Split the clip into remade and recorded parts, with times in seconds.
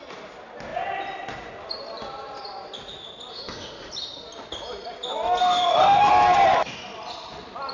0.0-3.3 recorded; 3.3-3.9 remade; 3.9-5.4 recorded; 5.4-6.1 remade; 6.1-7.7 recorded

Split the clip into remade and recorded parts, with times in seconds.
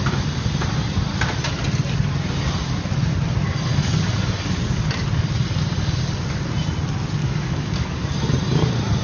0.0-7.2 recorded; 7.2-8.1 remade; 8.1-9.0 recorded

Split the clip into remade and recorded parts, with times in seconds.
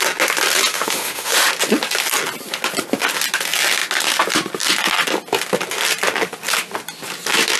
0.0-0.7 recorded; 0.7-1.5 remade; 1.5-7.6 recorded